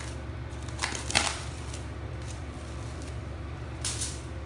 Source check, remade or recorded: remade